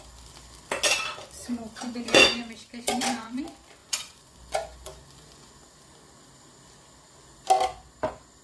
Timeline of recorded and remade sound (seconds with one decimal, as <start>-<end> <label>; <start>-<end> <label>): 0.0-1.4 recorded; 1.4-3.4 remade; 3.4-3.8 recorded; 3.8-5.5 remade; 5.5-8.4 recorded